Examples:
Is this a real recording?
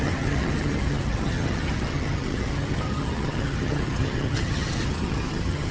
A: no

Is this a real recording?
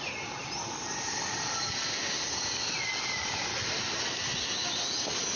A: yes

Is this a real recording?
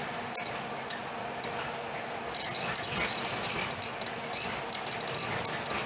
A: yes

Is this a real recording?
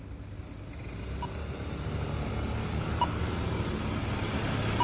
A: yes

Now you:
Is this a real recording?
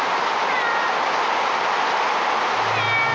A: yes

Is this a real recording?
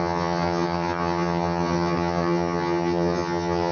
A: no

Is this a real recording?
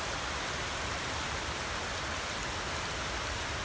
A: yes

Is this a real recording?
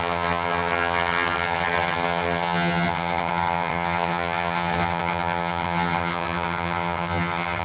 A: no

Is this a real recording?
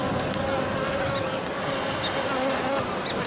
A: yes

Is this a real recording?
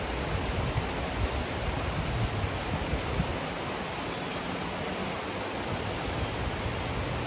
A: yes